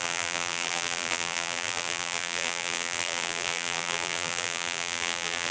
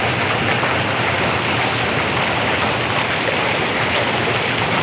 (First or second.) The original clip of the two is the second